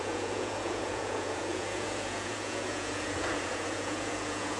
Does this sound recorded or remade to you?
remade